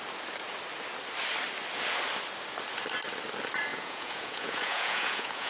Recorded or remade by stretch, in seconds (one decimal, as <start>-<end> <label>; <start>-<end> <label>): 0.0-3.7 recorded; 3.7-5.5 remade